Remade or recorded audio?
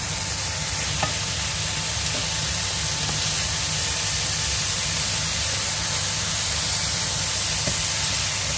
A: recorded